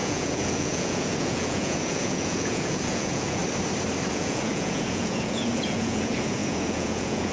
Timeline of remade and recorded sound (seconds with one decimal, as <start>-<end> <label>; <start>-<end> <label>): 0.0-3.4 remade; 3.4-4.1 recorded; 4.1-7.3 remade